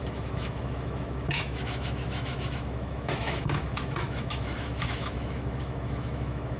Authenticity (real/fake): fake